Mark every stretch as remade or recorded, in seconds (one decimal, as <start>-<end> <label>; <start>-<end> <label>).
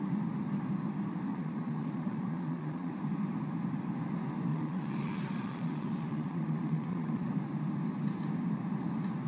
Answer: 0.0-1.3 recorded; 1.3-2.9 remade; 2.9-4.5 recorded; 4.5-7.3 remade; 7.3-9.3 recorded